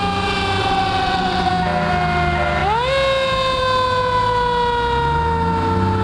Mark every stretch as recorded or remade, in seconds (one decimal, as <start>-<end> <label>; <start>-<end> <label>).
0.0-0.6 recorded; 0.6-1.5 remade; 1.5-6.0 recorded